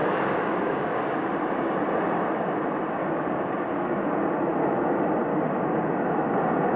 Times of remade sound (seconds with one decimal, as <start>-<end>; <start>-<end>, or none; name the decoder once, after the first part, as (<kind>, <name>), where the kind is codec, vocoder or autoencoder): 0.0-1.0 (codec, DAC); 3.0-4.2; 5.3-5.9